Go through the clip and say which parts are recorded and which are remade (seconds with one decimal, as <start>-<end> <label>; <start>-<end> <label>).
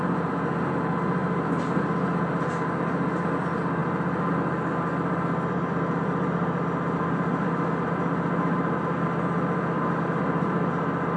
0.0-11.2 recorded